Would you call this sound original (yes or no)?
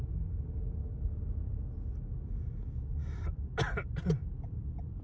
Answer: yes